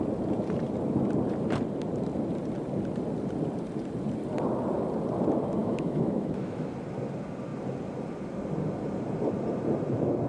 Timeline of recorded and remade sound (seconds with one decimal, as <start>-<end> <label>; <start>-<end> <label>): 0.0-5.6 recorded; 5.6-6.7 remade; 6.7-10.3 recorded